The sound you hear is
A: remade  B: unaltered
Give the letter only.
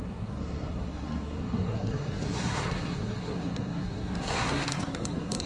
A